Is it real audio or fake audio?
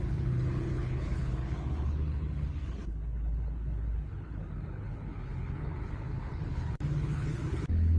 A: fake